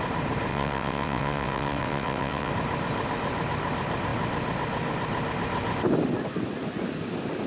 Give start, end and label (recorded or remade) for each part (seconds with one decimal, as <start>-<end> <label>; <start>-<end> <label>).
0.0-0.5 recorded; 0.5-2.5 remade; 2.5-7.5 recorded